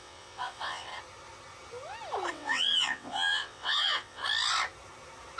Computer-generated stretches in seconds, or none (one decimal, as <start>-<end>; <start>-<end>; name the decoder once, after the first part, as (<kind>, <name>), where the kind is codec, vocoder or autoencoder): 0.0-0.9 (vocoder, WaveNeXt); 2.3-4.2